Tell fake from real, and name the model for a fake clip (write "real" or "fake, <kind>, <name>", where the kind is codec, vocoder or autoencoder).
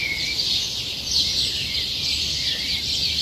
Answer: real